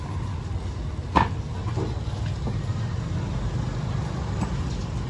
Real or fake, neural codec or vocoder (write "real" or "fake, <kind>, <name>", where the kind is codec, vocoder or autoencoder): real